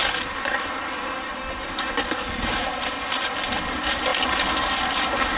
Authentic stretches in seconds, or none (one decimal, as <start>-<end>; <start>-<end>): 0.0-5.4